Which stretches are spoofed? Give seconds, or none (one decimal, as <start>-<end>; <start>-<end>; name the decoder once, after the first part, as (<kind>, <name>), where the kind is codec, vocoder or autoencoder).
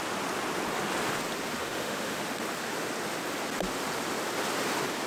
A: 1.6-2.2 (autoencoder, DAC-VAE)